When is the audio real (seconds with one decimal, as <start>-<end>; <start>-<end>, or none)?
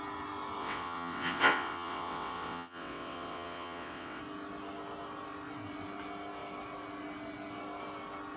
0.0-0.6; 4.2-8.4